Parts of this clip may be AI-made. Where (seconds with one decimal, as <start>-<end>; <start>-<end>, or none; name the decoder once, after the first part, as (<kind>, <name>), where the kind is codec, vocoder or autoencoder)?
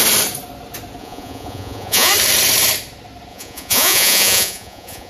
1.0-2.1 (vocoder, Vocos); 3.3-5.1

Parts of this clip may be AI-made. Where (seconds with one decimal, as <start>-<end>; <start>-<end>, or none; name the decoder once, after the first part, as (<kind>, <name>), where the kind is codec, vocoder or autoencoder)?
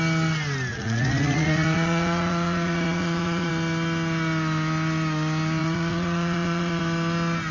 0.7-3.5 (vocoder, Vocos); 5.6-6.8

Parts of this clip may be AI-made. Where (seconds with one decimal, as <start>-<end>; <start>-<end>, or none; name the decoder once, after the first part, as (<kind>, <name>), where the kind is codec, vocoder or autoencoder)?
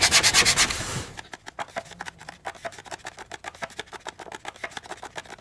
none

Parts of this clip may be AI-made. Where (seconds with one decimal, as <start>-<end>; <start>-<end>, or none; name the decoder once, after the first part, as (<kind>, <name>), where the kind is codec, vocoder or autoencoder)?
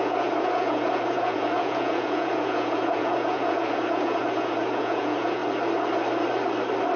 0.0-5.4 (vocoder, Vocos)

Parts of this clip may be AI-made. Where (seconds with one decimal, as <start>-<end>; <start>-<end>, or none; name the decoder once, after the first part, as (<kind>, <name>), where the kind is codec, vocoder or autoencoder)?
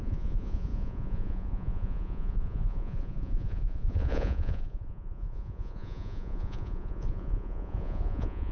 0.0-8.5 (vocoder, Vocos)